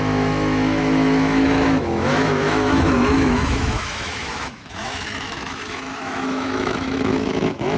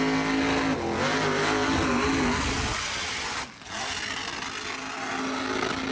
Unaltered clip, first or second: second